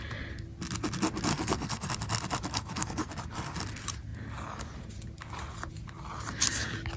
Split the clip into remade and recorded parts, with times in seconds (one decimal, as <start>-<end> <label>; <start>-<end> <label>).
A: 0.0-1.3 recorded; 1.3-1.9 remade; 1.9-2.5 recorded; 2.5-3.1 remade; 3.1-7.0 recorded